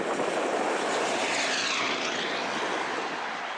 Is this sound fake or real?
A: real